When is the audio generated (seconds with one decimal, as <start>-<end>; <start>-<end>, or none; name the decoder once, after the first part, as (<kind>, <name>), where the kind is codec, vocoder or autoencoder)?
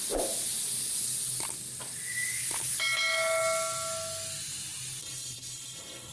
5.0-6.1 (codec, HILCodec)